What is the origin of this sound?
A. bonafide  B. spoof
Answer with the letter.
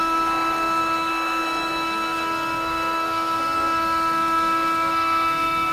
B